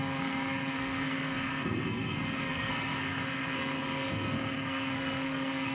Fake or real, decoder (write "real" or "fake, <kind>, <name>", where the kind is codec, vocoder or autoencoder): fake, codec, SNAC